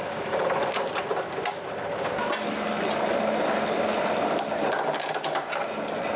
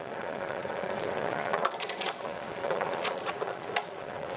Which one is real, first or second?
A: first